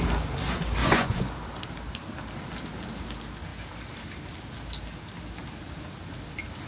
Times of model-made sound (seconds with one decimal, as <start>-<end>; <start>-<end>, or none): 0.8-1.3